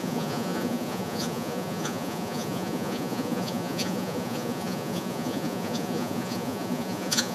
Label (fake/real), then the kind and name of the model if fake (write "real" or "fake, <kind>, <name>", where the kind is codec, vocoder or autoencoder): fake, vocoder, Vocos